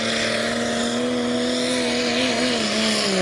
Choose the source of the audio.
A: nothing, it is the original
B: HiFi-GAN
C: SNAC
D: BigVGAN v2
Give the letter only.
A